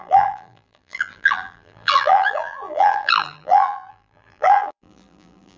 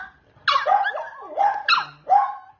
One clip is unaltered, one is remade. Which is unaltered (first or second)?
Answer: second